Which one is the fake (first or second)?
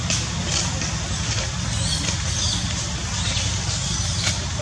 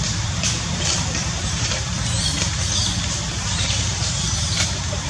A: second